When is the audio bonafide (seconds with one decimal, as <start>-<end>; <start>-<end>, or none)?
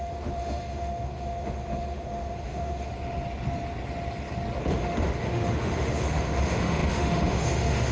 2.9-4.6